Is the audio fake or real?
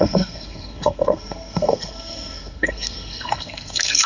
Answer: fake